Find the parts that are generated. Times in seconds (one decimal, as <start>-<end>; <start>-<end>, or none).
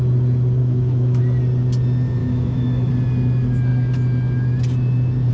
0.6-1.2; 2.2-2.9